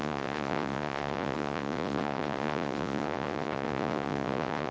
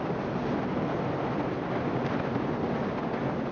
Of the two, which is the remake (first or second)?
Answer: first